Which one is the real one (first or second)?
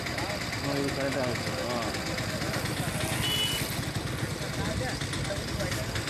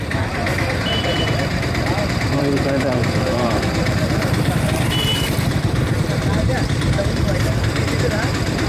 first